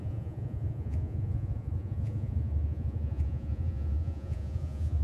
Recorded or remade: remade